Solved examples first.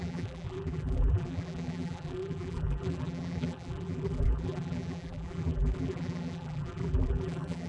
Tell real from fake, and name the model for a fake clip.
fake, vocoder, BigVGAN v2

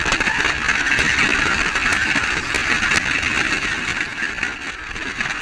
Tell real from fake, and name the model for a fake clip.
real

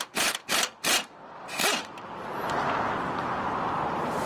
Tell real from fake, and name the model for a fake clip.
fake, vocoder, BigVGAN v2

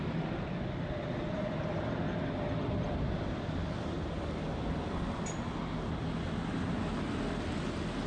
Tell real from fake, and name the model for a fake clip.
real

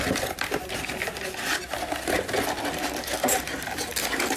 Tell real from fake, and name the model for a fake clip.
real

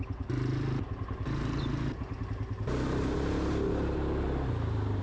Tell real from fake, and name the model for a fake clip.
real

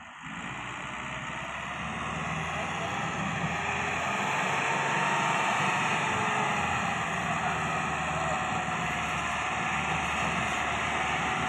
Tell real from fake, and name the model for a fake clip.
real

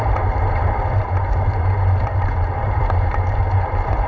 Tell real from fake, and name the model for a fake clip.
fake, vocoder, BigVGAN v2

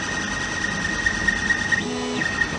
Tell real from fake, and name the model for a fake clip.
real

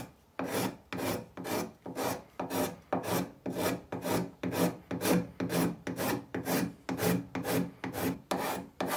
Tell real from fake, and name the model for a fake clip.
real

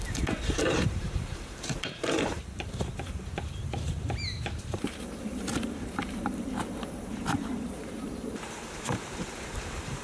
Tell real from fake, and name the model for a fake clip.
fake, vocoder, BigVGAN v2